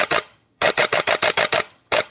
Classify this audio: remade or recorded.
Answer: remade